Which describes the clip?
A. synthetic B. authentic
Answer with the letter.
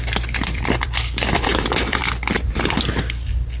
A